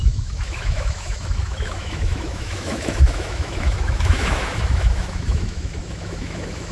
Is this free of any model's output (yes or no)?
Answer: no